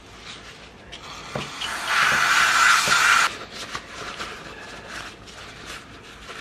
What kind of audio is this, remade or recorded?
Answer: recorded